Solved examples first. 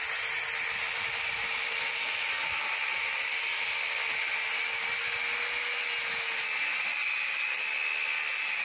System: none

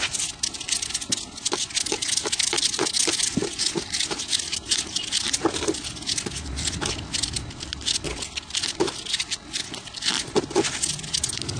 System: none